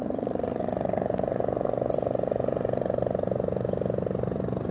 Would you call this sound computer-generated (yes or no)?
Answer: no